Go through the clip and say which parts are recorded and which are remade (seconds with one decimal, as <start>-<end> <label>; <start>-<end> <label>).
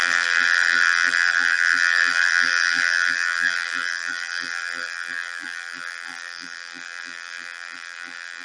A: 0.0-8.4 remade